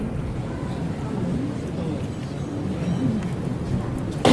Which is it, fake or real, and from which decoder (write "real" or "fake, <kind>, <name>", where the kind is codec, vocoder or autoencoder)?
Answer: real